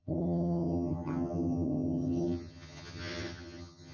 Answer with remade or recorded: remade